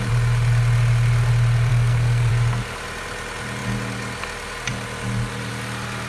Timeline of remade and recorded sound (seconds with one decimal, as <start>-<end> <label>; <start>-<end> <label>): 0.0-1.7 recorded; 1.7-2.3 remade; 2.3-6.1 recorded